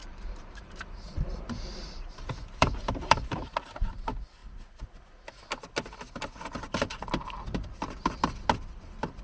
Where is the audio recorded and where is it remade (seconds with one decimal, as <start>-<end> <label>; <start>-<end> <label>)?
0.0-3.5 remade; 3.5-9.2 recorded